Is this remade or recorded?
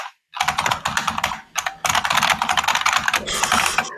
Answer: recorded